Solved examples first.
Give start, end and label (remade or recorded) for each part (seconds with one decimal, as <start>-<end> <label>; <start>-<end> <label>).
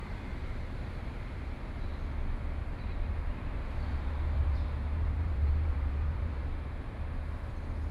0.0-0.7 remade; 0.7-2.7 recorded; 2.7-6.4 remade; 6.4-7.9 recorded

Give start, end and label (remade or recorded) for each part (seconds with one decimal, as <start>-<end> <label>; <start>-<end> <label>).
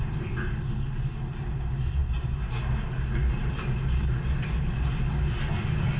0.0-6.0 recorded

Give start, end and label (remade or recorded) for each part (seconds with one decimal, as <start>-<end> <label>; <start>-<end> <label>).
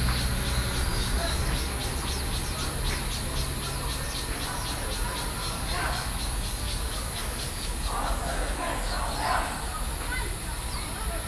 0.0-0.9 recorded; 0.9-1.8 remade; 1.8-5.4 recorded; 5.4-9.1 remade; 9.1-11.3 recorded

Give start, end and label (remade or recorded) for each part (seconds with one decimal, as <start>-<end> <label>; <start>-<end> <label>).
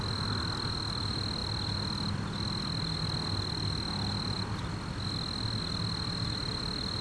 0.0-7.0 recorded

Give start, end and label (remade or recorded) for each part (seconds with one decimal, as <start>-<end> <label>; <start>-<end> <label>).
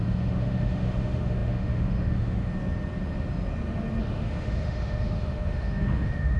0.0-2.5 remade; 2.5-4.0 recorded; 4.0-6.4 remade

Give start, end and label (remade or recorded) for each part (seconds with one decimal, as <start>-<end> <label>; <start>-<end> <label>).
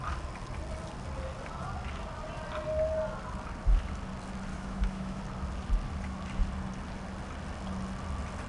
0.0-4.5 recorded; 4.5-5.2 remade; 5.2-8.5 recorded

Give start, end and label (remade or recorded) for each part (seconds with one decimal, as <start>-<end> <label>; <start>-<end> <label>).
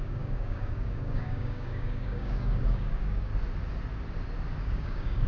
0.0-3.3 remade; 3.3-4.6 recorded; 4.6-5.3 remade